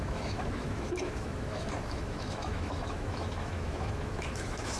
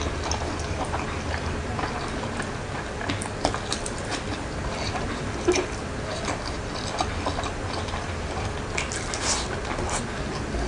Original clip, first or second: second